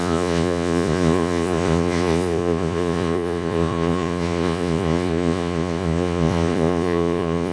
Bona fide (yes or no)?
no